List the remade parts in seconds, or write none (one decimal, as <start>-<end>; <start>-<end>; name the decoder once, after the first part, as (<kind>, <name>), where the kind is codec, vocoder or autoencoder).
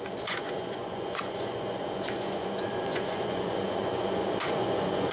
0.0-5.1 (vocoder, Vocos)